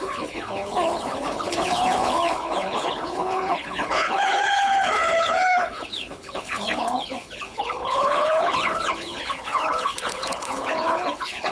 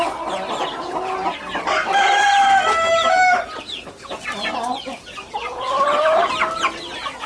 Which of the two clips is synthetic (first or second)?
first